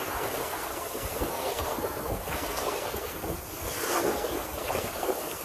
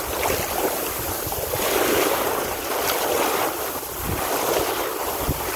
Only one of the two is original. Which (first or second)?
second